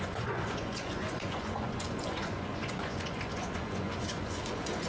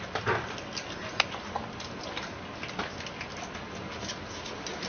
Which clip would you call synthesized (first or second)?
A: first